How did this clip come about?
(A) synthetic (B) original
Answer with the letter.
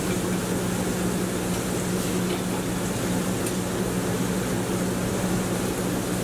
B